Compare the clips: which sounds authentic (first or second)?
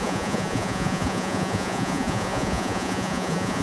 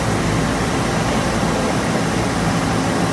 second